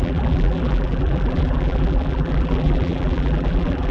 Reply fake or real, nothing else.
fake